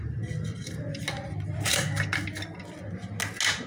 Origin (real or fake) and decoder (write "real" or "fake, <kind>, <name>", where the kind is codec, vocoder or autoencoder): real